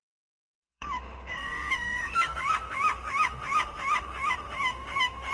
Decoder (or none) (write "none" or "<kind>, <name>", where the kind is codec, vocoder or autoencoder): autoencoder, DAC-VAE